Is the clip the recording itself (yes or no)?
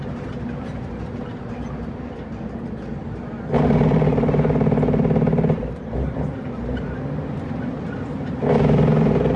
no